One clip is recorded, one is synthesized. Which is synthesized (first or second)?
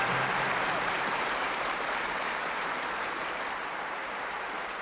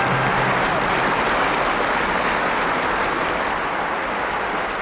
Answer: first